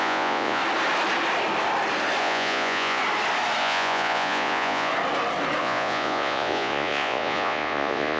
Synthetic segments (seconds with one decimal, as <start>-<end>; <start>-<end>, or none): 0.0-0.6; 2.2-3.0; 3.6-4.9; 5.6-8.2